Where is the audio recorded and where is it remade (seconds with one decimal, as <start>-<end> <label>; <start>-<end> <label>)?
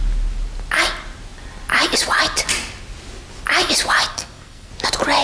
0.0-4.1 recorded; 4.1-4.7 remade; 4.7-5.2 recorded